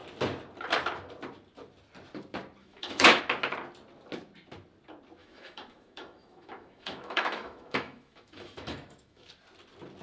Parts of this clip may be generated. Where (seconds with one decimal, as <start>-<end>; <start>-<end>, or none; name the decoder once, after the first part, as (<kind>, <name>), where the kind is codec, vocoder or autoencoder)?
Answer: 2.6-3.2 (autoencoder, DAC-VAE); 5.2-9.3